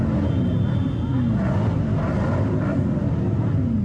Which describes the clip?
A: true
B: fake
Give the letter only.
A